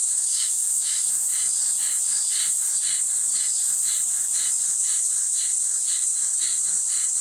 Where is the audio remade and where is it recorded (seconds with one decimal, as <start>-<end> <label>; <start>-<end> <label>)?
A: 0.0-1.1 remade; 1.1-7.2 recorded